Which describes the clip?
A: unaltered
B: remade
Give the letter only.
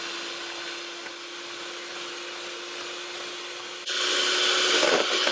A